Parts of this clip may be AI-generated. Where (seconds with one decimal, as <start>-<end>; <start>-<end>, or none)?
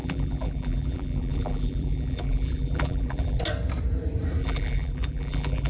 0.0-3.4; 4.4-5.7